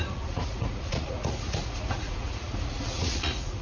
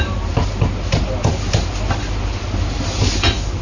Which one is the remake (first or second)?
first